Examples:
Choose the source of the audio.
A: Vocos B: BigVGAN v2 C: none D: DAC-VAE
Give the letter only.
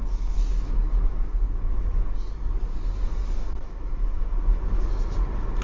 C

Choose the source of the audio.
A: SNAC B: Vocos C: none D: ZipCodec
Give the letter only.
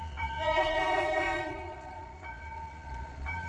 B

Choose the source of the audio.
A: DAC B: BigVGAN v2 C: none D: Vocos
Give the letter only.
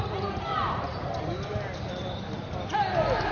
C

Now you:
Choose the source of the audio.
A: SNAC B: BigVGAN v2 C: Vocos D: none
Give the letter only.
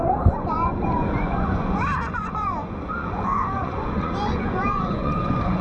C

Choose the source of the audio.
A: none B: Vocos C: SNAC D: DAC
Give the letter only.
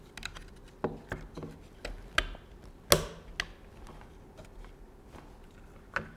A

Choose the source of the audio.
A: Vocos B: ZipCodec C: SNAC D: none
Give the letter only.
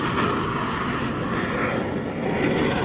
D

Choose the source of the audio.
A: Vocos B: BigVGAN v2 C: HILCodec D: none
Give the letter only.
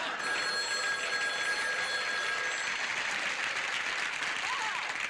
D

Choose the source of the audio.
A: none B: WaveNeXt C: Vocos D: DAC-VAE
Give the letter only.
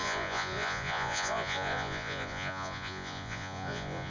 C